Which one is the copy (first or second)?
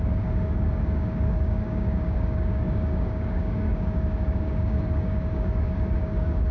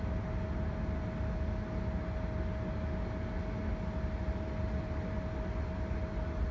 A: first